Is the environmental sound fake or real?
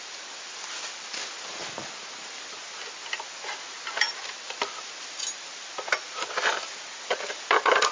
real